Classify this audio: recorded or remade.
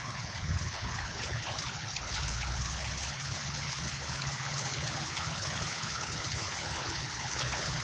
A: remade